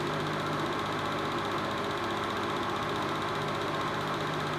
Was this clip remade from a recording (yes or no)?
no